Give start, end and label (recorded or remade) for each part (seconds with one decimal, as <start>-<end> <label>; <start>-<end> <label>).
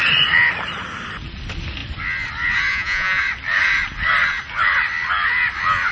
0.0-2.7 recorded; 2.7-3.2 remade; 3.2-5.9 recorded